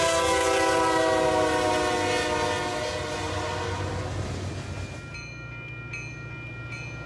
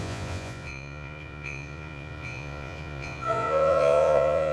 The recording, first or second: first